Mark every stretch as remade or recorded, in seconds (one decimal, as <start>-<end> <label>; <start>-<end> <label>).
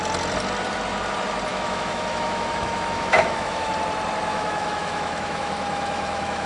0.0-1.5 recorded; 1.5-3.7 remade; 3.7-4.3 recorded; 4.3-6.5 remade